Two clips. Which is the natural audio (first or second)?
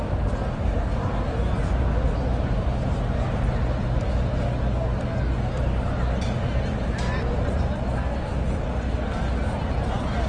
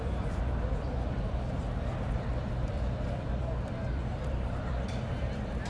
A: first